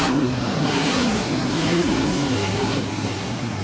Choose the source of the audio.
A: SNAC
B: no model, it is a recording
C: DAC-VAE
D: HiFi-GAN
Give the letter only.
A